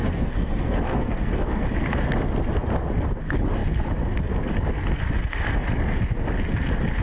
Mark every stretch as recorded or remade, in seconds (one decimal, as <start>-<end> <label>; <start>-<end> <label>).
0.0-1.7 remade; 1.7-7.0 recorded